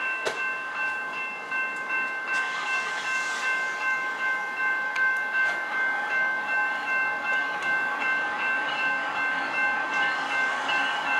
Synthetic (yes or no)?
yes